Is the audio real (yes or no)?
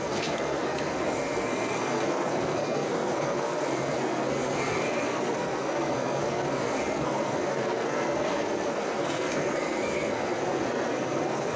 no